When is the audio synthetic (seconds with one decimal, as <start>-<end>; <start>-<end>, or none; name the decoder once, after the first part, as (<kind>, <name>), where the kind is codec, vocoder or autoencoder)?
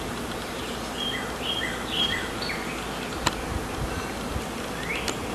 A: 0.0-2.6 (vocoder, BigVGAN v2)